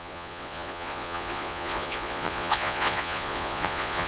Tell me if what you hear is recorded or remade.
remade